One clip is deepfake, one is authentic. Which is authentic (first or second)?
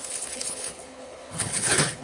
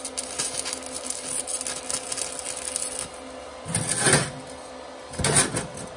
second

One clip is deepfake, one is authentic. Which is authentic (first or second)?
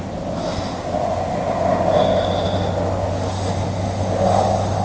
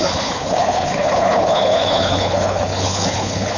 first